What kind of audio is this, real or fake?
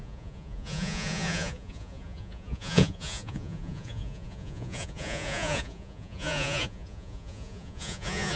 fake